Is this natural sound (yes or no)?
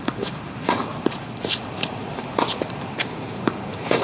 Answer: no